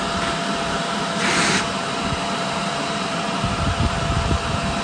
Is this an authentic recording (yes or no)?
no